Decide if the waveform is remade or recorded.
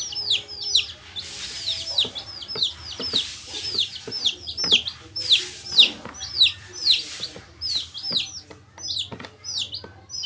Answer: recorded